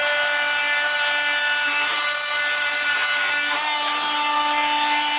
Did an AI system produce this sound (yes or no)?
no